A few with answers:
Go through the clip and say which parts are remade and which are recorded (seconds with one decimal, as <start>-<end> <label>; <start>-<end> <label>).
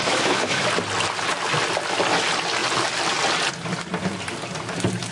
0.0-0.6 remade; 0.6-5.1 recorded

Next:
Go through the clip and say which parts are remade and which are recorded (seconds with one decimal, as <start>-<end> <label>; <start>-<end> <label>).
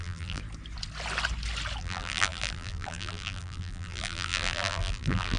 0.0-0.4 remade; 0.4-1.8 recorded; 1.8-5.4 remade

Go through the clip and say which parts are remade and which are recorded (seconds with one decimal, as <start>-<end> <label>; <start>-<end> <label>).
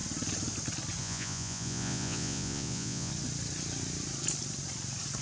0.0-1.0 recorded; 1.0-3.1 remade; 3.1-5.2 recorded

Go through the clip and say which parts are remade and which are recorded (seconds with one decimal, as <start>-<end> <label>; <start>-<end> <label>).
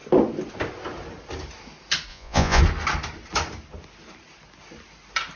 0.0-2.1 recorded; 2.1-2.6 remade; 2.6-5.4 recorded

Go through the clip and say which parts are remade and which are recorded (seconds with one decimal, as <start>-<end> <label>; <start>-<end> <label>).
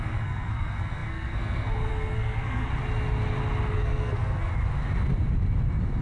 0.0-2.7 remade; 2.7-3.7 recorded; 3.7-4.5 remade; 4.5-6.0 recorded